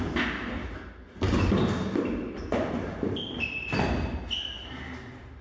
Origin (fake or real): real